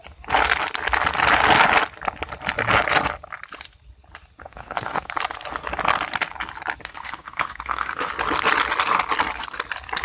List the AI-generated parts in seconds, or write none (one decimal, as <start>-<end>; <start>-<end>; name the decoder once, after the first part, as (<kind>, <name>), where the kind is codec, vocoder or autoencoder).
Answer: 4.4-5.1 (codec, SNAC); 6.8-8.1